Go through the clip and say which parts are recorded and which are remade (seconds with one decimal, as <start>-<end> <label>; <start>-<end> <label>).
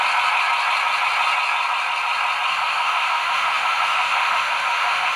0.0-2.5 recorded; 2.5-5.2 remade